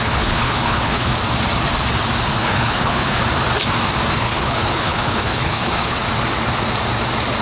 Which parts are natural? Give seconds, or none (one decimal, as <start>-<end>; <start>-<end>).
1.1-2.4; 3.2-4.1; 6.0-7.4